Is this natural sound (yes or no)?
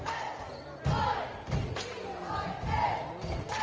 yes